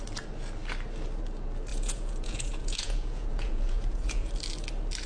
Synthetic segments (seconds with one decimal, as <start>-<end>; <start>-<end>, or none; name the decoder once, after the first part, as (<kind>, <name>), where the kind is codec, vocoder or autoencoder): 1.7-4.3 (vocoder, Vocos)